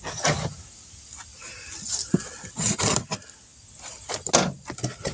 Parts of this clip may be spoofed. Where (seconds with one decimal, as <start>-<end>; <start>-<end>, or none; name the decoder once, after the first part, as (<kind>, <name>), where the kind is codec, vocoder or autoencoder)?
3.5-4.3 (vocoder, BigVGAN v2)